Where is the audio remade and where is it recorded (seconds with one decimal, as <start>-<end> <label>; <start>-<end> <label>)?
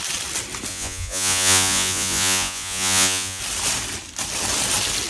0.0-0.7 recorded; 0.7-3.4 remade; 3.4-5.1 recorded